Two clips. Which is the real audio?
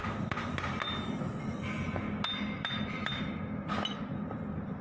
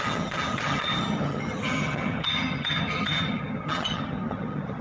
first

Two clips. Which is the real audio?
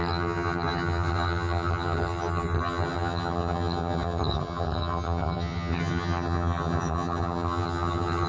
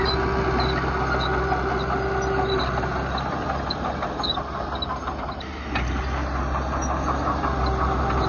second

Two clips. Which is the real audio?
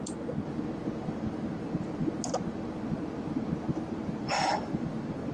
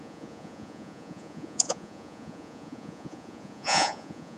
first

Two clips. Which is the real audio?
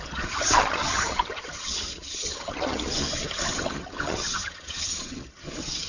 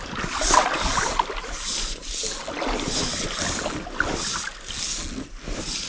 second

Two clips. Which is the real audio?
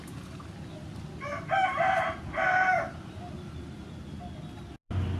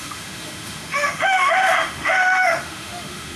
first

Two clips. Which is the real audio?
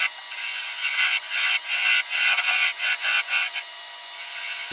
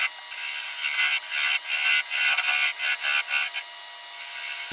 second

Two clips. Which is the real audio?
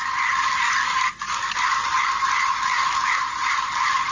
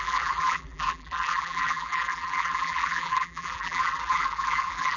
first